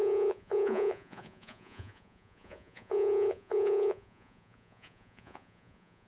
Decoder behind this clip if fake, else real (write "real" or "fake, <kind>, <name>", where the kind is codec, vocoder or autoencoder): fake, vocoder, Vocos